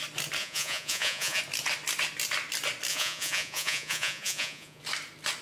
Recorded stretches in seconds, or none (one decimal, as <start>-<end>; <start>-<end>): 0.0-0.4; 1.4-2.9; 4.8-5.4